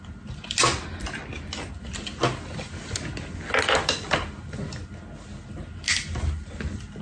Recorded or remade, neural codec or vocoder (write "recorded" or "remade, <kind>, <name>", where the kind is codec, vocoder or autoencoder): recorded